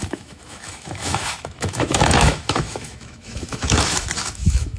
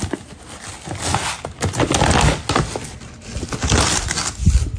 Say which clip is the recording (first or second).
second